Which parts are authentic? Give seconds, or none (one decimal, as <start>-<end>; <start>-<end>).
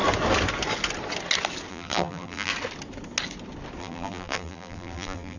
0.0-1.7; 2.5-3.8